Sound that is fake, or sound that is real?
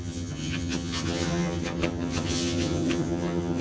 fake